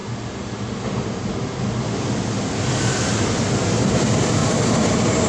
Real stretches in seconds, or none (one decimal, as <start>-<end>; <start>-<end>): 0.0-5.3